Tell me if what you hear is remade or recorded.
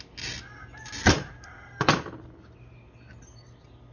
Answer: recorded